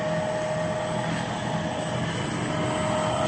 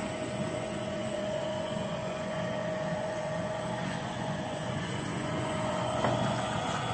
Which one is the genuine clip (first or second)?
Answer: first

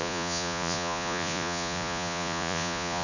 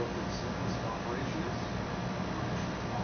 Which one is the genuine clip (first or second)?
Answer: second